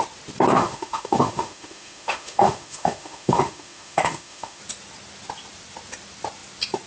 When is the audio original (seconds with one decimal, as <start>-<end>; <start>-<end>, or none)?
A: 0.0-0.5; 4.6-6.9